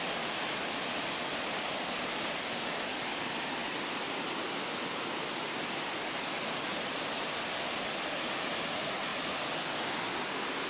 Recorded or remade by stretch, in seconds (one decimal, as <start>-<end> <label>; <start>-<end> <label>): 0.0-10.7 recorded